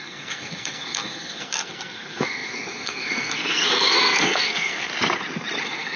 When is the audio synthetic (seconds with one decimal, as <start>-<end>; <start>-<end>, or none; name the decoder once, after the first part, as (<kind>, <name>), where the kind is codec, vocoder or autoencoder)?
0.0-4.9 (codec, SNAC); 5.6-6.0